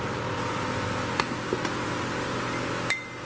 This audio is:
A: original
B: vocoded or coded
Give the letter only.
A